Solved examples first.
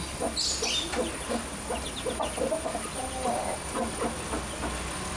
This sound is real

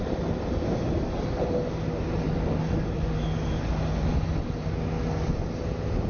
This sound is real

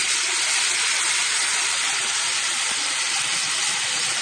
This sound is real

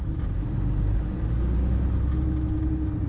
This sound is real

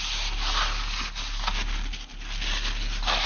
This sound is real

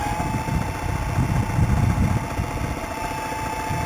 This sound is real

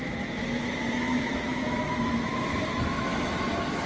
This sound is fake